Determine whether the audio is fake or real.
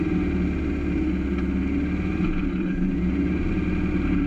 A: real